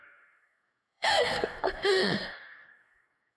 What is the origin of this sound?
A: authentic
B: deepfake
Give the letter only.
B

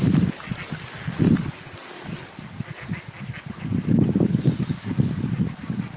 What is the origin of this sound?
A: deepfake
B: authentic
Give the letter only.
B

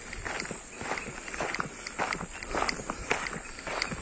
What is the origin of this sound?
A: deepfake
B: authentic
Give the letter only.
B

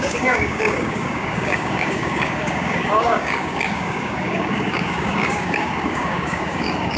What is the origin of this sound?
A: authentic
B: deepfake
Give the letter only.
B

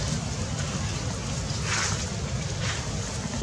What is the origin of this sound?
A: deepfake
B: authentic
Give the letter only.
B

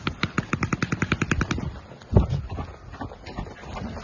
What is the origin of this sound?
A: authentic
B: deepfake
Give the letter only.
A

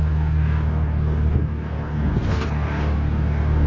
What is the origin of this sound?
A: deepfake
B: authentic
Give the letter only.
A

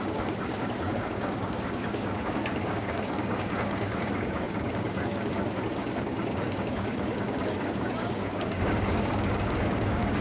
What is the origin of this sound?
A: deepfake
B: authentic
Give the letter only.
A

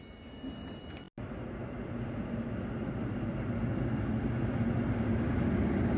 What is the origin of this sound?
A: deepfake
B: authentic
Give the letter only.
B